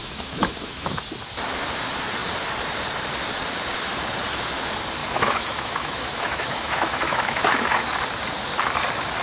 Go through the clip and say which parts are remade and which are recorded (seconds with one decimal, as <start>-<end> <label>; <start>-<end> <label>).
0.0-1.0 remade; 1.0-5.0 recorded; 5.0-7.7 remade; 7.7-9.2 recorded